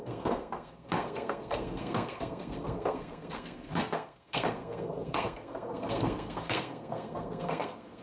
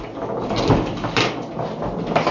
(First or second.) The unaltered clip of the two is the second